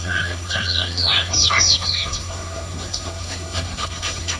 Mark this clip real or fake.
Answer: fake